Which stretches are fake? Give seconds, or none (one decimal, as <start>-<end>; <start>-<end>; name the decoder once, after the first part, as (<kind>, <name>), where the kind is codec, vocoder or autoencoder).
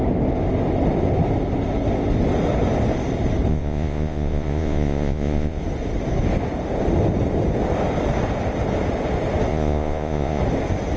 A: 3.5-5.6 (vocoder, Vocos); 9.5-10.4